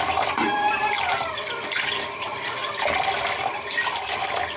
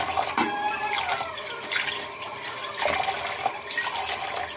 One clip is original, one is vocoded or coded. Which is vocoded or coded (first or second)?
first